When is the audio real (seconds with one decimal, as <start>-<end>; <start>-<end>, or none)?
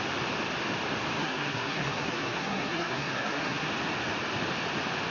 0.0-1.2; 3.7-5.1